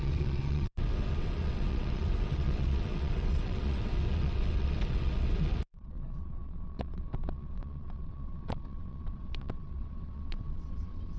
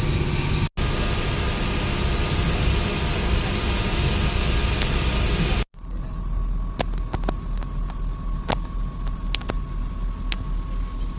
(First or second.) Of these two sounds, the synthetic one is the first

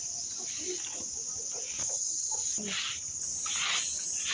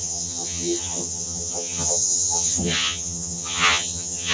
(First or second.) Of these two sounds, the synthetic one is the second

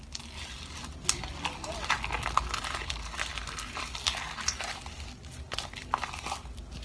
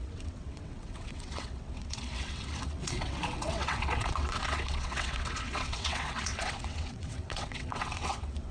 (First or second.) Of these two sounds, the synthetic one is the second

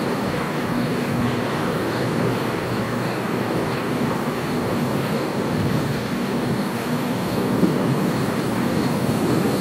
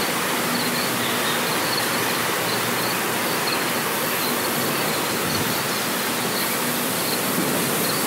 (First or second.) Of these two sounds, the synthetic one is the first